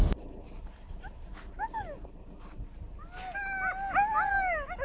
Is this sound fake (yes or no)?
no